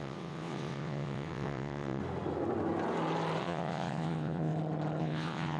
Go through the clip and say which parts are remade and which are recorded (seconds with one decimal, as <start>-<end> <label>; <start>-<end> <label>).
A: 0.0-2.0 remade; 2.0-3.4 recorded; 3.4-4.5 remade; 4.5-5.0 recorded; 5.0-5.6 remade